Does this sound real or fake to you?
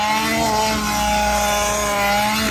real